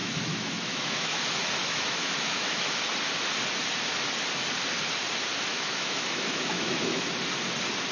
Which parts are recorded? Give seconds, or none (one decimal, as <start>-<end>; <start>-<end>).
1.2-1.6; 2.8-5.5; 7.0-7.9